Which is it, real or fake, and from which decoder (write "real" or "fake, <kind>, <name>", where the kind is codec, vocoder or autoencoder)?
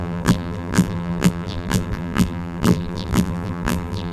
fake, vocoder, BigVGAN v2